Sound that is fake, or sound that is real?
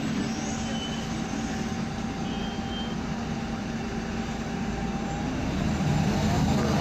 real